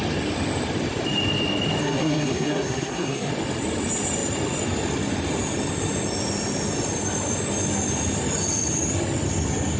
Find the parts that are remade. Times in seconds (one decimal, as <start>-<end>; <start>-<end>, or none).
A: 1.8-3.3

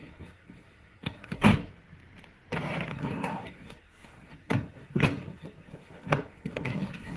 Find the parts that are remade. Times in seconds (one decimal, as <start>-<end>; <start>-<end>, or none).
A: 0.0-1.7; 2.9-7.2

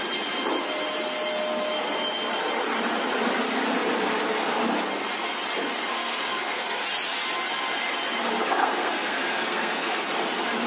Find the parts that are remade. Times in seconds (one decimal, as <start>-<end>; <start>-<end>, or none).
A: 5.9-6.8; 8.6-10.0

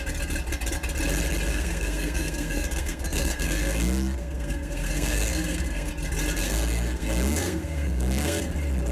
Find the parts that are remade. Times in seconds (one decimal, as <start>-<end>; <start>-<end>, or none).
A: 1.5-5.9; 6.4-8.5

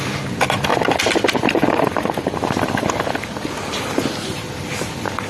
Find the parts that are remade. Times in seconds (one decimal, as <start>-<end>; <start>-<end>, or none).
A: none

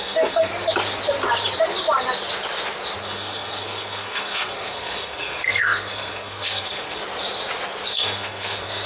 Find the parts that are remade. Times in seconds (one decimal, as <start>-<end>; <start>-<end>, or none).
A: 0.0-0.5; 3.0-7.0; 7.9-8.9

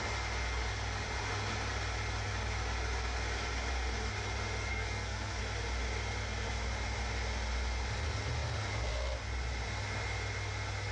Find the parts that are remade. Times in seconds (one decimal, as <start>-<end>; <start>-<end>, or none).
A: 4.7-5.4

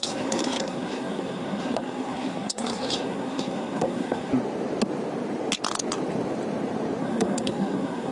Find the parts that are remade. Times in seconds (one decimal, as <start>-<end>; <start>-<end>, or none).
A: 0.0-4.3; 7.0-8.1